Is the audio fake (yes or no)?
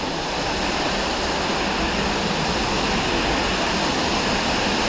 no